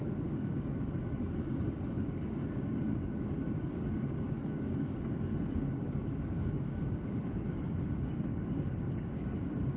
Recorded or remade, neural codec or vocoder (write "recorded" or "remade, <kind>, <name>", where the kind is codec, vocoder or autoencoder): remade, codec, DAC